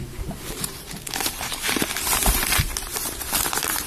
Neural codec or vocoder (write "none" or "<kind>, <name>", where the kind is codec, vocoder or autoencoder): vocoder, BigVGAN v2